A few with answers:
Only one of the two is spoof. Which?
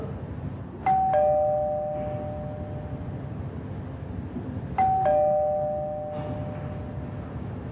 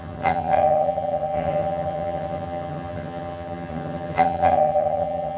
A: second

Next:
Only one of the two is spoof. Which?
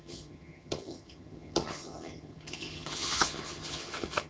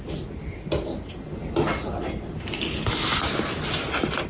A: first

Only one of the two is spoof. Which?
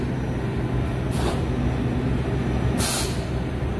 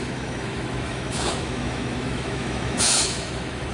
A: second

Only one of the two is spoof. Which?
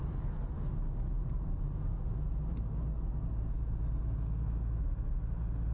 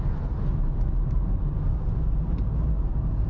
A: second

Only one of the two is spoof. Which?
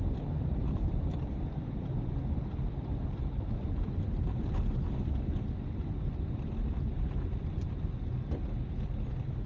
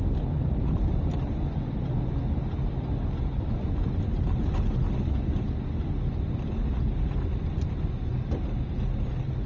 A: first